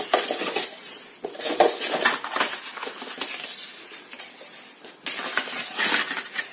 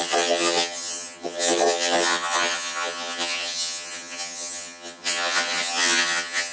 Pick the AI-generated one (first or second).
second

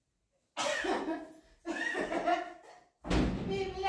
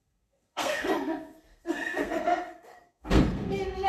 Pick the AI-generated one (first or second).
second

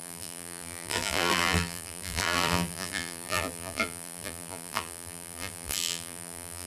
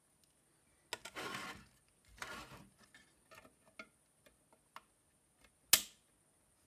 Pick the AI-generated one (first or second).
first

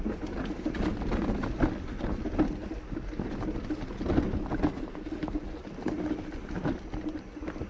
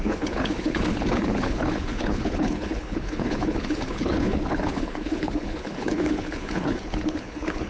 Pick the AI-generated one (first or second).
second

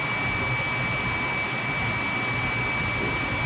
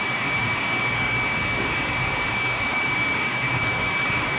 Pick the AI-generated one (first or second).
second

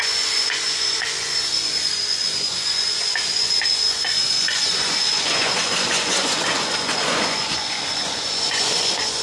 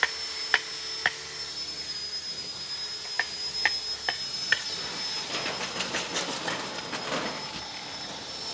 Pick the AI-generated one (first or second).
first